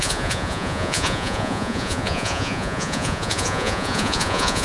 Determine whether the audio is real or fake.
fake